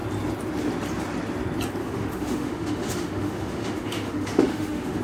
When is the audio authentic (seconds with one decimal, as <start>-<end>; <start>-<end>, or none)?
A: 0.0-1.8